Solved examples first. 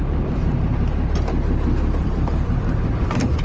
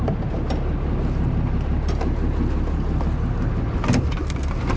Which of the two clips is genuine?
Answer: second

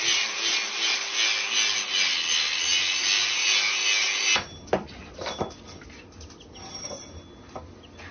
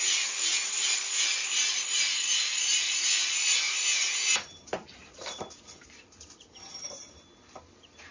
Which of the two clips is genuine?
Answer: first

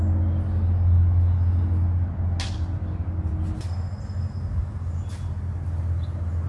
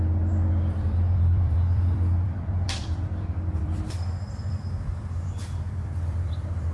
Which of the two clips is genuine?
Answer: first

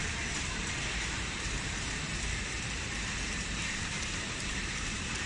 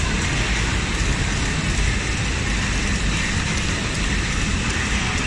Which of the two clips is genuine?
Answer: second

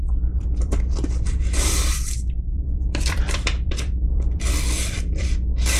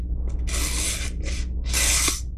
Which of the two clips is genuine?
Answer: second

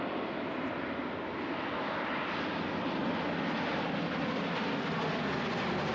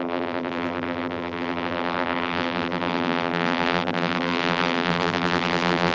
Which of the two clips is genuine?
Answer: first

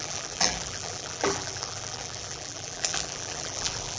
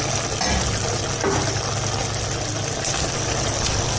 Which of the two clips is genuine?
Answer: second